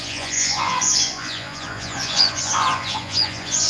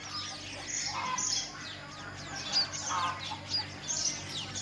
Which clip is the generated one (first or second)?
first